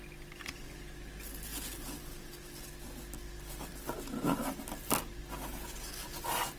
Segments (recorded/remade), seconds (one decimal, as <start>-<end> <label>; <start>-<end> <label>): 0.0-6.6 recorded